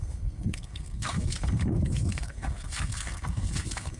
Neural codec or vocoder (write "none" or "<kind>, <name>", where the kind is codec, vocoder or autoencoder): codec, SNAC